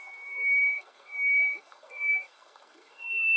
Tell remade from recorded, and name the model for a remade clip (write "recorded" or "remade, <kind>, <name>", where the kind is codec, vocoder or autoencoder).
remade, codec, SNAC